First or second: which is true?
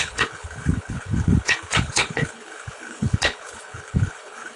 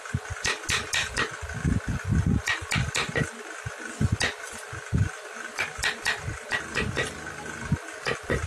second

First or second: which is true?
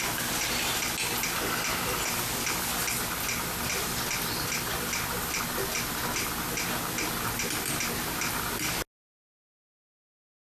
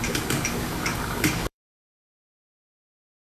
first